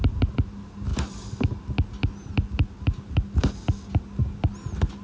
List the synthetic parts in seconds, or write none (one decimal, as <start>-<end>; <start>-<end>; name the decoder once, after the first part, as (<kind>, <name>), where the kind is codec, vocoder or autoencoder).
none